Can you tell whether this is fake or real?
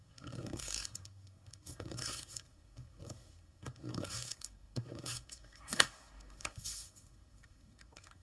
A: fake